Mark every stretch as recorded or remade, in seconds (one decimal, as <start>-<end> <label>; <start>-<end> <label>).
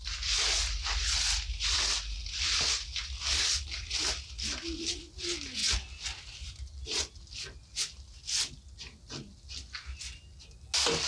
0.0-11.1 recorded